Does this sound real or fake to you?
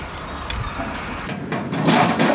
real